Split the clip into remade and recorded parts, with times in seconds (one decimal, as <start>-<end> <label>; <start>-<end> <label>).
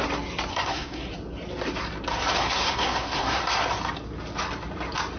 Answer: 0.0-0.5 recorded; 0.5-1.1 remade; 1.1-2.4 recorded; 2.4-3.4 remade; 3.4-5.2 recorded